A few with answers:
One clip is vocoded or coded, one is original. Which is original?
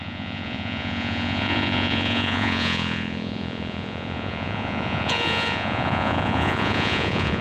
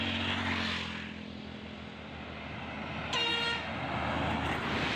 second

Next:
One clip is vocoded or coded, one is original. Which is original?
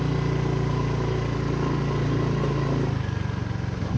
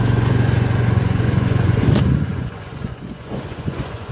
first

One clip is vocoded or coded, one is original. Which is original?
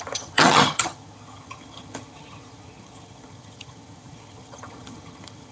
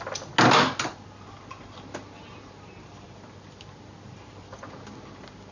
second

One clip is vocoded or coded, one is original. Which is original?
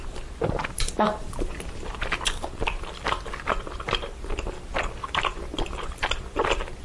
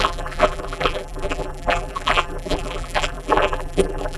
first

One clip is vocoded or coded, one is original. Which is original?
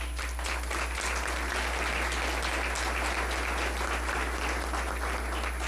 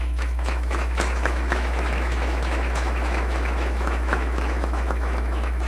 first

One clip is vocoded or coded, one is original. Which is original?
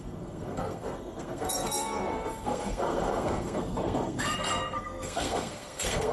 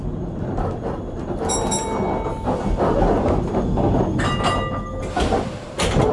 second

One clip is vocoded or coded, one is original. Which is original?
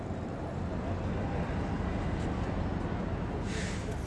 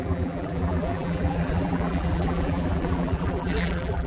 first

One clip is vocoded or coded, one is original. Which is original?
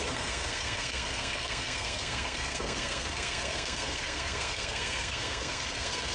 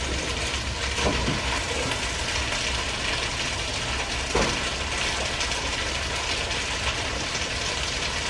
second